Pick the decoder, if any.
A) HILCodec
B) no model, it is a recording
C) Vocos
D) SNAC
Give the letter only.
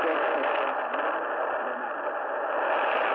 B